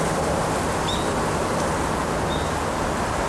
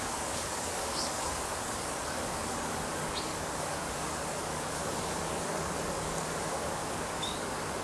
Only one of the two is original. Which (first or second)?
first